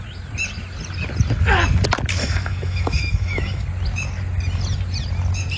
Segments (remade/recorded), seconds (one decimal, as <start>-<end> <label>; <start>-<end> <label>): 0.0-2.2 recorded; 2.2-3.6 remade; 3.6-5.6 recorded